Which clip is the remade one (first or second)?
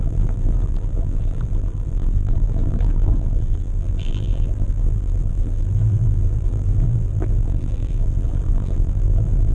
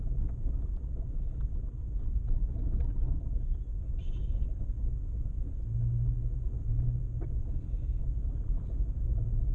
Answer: first